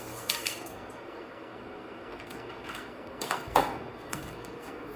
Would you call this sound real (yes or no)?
no